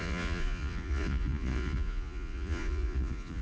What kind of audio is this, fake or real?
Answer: fake